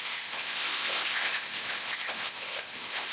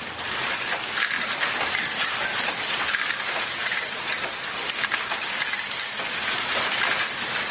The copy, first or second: first